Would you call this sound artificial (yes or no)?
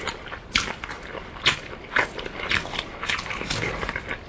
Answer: no